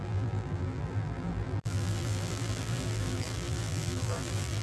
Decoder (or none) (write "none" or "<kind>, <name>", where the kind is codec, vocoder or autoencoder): vocoder, BigVGAN v2